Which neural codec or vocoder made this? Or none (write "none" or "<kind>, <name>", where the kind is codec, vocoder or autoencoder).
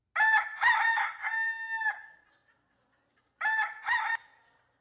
none